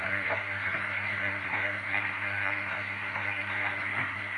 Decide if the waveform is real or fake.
fake